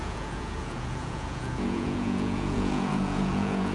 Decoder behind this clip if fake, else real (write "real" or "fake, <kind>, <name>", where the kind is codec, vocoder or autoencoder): fake, vocoder, Vocos